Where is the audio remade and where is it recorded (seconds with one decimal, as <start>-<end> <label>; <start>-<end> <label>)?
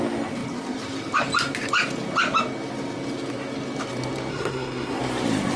0.0-4.3 recorded; 4.3-5.0 remade; 5.0-5.6 recorded